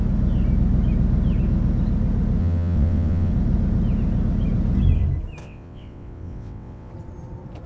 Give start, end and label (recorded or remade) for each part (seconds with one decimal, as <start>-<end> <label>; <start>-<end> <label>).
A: 0.0-2.4 recorded; 2.4-3.3 remade; 3.3-5.4 recorded; 5.4-6.9 remade; 6.9-7.7 recorded